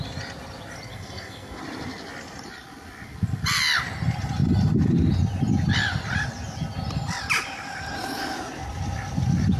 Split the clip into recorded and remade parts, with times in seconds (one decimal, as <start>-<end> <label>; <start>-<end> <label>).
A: 0.0-0.9 recorded; 0.9-1.6 remade; 1.6-9.6 recorded

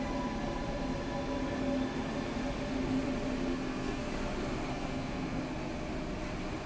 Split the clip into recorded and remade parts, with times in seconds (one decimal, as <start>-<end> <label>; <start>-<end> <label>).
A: 0.0-3.5 recorded; 3.5-4.1 remade; 4.1-4.7 recorded; 4.7-5.4 remade; 5.4-6.7 recorded

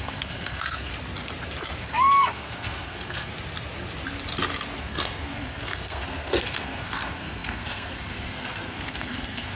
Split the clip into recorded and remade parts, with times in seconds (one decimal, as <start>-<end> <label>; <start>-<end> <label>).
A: 0.0-0.9 remade; 0.9-1.8 recorded; 1.8-3.3 remade; 3.3-4.8 recorded; 4.8-9.6 remade

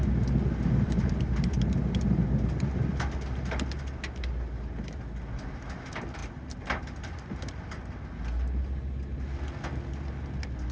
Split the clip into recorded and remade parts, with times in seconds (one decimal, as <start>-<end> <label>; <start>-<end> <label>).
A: 0.0-10.7 recorded